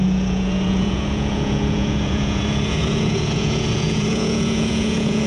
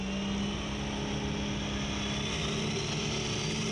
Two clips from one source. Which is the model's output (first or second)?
first